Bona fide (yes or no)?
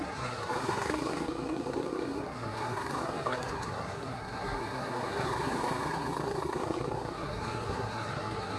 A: no